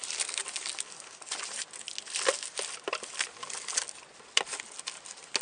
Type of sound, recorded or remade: recorded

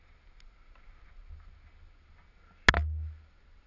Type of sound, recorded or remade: recorded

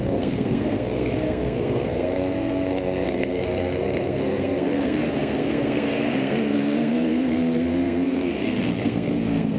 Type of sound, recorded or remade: remade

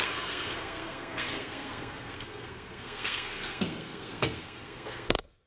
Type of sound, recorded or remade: remade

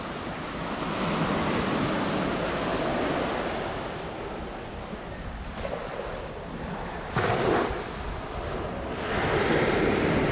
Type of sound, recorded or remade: recorded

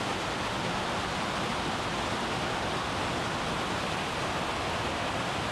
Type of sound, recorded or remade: recorded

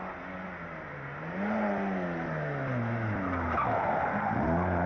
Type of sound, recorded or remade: recorded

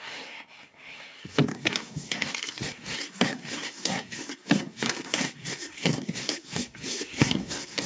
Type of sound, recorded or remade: remade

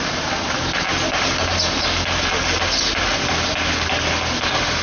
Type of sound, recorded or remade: recorded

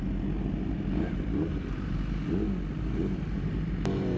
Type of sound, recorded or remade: recorded